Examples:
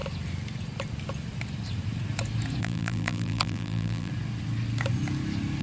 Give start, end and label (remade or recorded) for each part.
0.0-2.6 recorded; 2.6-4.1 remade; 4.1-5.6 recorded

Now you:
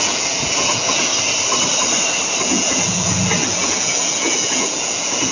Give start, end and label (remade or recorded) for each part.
0.0-1.1 remade; 1.1-2.4 recorded; 2.4-5.3 remade

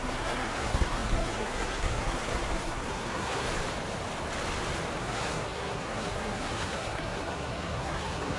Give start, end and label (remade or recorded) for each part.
0.0-3.5 remade; 3.5-5.0 recorded; 5.0-8.4 remade

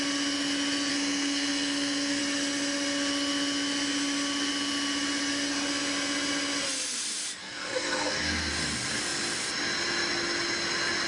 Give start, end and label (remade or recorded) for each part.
0.0-0.9 recorded; 0.9-2.2 remade; 2.2-7.4 recorded; 7.4-8.5 remade; 8.5-11.1 recorded

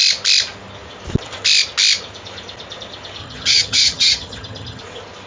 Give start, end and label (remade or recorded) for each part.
0.0-3.2 recorded; 3.2-4.8 remade; 4.8-5.3 recorded